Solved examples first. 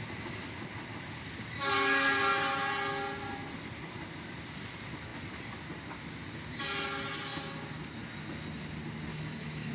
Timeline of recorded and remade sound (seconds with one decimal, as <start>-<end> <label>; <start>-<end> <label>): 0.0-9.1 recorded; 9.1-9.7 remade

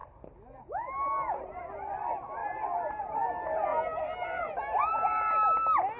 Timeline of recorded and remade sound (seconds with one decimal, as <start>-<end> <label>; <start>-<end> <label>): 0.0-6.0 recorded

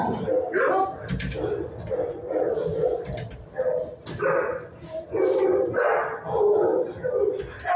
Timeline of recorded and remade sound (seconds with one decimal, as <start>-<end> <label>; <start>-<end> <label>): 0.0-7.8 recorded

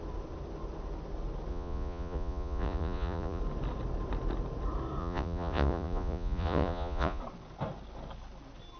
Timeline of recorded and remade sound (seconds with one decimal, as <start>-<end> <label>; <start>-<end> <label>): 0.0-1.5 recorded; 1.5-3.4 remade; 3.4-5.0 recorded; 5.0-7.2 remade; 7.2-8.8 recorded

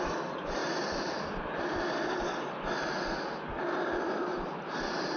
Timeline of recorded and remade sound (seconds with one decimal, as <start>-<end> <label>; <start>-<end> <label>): 0.0-5.2 recorded

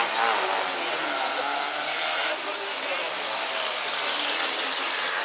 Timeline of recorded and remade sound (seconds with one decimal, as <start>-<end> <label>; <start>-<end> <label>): 0.0-5.2 recorded